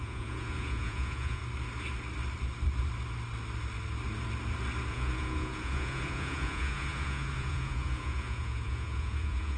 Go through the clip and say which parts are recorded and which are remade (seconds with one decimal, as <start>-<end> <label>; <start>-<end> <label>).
0.0-1.4 remade; 1.4-4.9 recorded; 4.9-9.6 remade